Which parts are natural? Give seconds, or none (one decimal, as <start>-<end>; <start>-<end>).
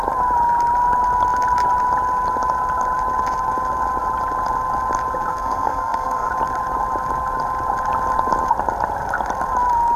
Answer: 0.0-5.3; 6.3-10.0